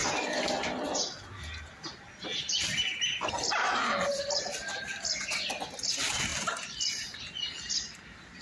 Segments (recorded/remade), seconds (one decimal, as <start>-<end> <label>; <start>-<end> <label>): 0.0-8.4 recorded